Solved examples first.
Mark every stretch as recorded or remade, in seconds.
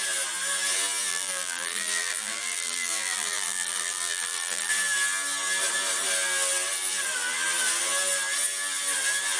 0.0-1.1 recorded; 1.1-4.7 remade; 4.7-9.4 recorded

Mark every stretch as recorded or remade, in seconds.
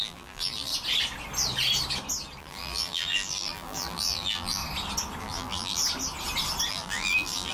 0.0-0.7 remade; 0.7-2.4 recorded; 2.4-4.6 remade; 4.6-5.2 recorded; 5.2-5.8 remade; 5.8-6.7 recorded; 6.7-7.5 remade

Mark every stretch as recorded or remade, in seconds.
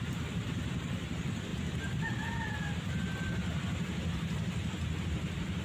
0.0-5.6 recorded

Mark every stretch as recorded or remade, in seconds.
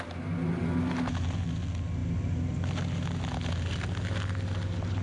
0.0-5.0 recorded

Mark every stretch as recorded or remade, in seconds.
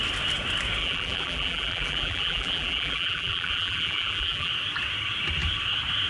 0.0-0.8 recorded; 0.8-4.5 remade; 4.5-6.1 recorded